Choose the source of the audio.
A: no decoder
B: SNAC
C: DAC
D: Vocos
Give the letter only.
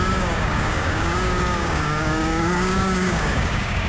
C